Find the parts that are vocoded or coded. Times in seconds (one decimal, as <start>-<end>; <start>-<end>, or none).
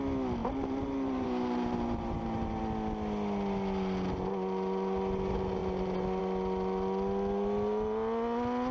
0.4-2.6